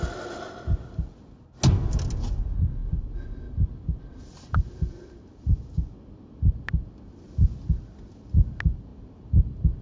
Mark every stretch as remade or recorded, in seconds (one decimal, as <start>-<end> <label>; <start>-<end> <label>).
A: 0.0-9.8 recorded